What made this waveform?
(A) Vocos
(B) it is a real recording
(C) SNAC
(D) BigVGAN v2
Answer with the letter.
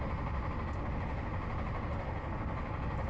B